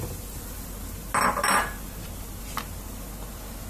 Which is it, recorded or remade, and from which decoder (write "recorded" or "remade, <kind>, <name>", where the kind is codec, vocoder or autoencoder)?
recorded